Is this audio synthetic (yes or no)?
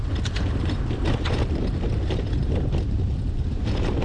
yes